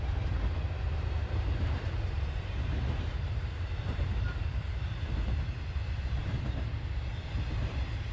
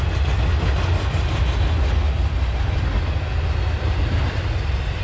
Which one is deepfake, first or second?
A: first